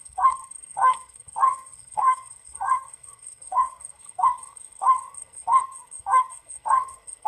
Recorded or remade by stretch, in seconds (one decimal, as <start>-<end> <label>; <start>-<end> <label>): 0.0-7.3 remade